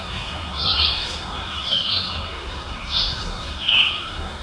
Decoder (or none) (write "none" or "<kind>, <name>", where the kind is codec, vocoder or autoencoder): codec, SNAC